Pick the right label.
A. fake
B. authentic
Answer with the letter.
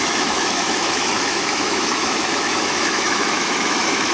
A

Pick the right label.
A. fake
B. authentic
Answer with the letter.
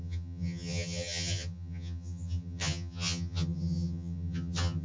A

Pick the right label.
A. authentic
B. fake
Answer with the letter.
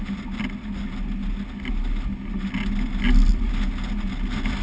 A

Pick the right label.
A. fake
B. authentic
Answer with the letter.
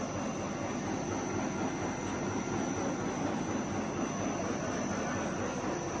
B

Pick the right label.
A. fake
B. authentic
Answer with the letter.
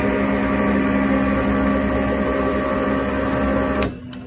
B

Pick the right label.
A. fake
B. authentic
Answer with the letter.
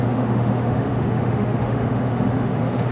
A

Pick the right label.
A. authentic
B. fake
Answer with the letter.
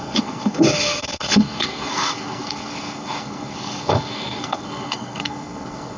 B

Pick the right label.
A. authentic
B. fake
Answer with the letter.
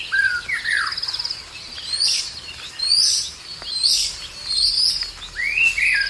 A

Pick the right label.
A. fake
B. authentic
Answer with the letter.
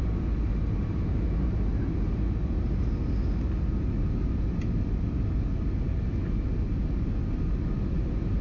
B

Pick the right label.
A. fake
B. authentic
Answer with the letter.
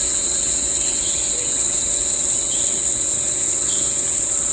A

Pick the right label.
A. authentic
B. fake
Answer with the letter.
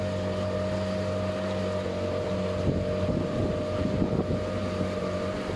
A